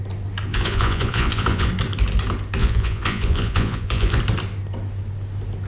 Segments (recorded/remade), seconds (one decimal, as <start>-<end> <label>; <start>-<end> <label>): 0.0-0.5 recorded; 0.5-1.7 remade; 1.7-2.6 recorded; 2.6-4.2 remade; 4.2-5.7 recorded

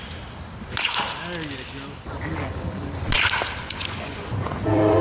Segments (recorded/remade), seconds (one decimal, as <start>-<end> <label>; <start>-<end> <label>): 0.0-3.6 recorded; 3.6-5.0 remade

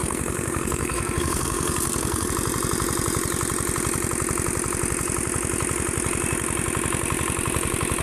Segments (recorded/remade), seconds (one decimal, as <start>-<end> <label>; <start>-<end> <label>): 0.0-2.3 remade; 2.3-8.0 recorded